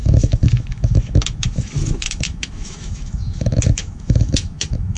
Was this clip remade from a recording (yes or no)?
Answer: yes